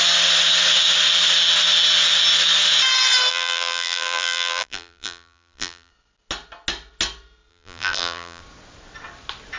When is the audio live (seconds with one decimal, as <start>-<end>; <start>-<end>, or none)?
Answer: 0.0-3.3; 5.9-7.5; 8.4-9.6